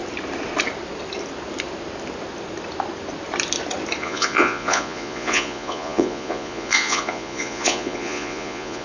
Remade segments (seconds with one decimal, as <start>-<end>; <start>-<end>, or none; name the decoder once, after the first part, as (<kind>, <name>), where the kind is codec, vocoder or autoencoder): 4.0-8.8 (vocoder, Vocos)